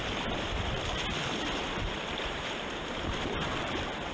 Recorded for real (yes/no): no